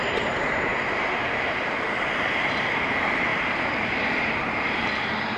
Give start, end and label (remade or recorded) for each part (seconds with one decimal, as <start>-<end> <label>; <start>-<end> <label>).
0.0-0.7 remade; 0.7-1.4 recorded; 1.4-5.4 remade

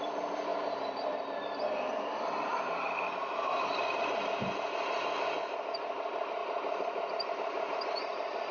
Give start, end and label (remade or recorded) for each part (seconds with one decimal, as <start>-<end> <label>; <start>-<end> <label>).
0.0-2.5 remade; 2.5-5.6 recorded; 5.6-8.5 remade

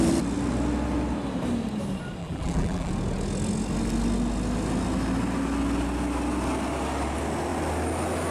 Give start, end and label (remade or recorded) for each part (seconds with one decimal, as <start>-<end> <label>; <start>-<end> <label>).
0.0-2.2 recorded; 2.2-2.9 remade; 2.9-8.3 recorded